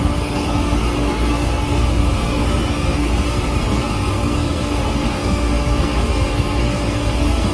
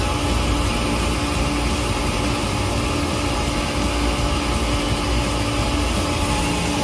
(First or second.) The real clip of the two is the second